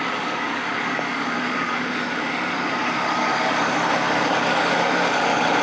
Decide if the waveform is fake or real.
fake